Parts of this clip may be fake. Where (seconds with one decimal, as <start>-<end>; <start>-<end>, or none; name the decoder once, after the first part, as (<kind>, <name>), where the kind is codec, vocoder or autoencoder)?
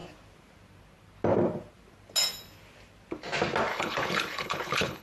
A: 3.7-5.0 (codec, HILCodec)